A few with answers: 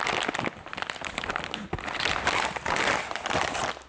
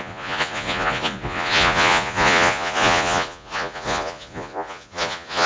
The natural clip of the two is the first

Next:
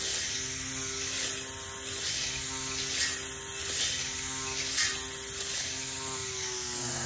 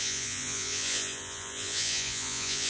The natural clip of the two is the first